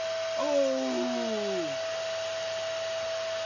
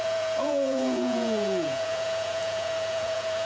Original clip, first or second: first